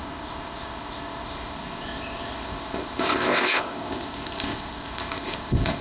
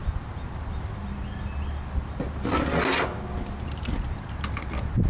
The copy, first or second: first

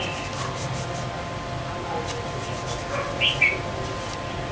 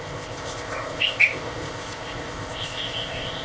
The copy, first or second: second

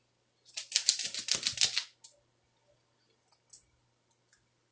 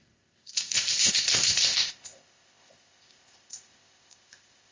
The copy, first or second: second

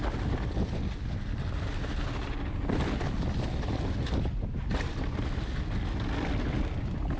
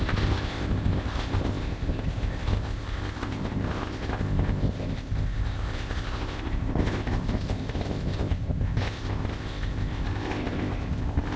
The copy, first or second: second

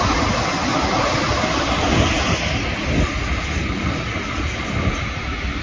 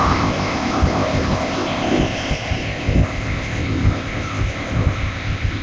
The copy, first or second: second